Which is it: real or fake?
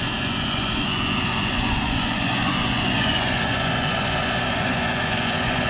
fake